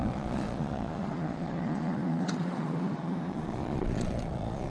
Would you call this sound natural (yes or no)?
no